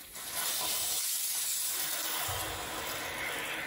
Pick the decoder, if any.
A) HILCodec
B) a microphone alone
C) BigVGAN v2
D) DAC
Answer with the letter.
B